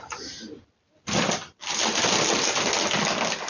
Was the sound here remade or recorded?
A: recorded